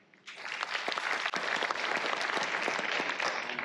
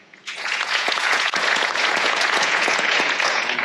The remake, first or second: second